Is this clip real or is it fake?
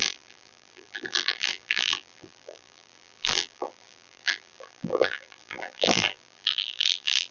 fake